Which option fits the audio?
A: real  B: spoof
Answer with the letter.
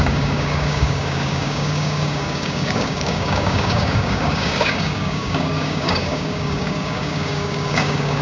B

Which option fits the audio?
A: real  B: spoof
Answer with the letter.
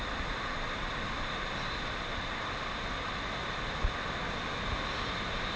A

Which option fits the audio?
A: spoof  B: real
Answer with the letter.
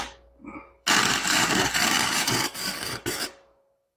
A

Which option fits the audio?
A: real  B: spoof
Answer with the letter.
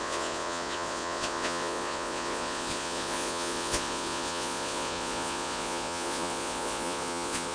B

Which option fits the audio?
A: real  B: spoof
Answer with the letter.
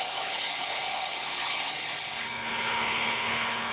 B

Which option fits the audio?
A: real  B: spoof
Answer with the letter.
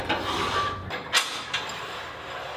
A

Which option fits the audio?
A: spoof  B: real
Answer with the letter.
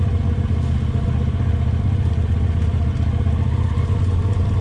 B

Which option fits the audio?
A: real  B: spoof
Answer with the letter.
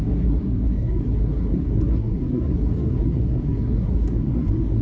B